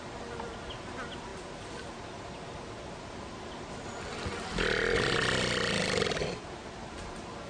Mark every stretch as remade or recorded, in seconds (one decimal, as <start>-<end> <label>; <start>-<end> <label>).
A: 0.0-7.5 recorded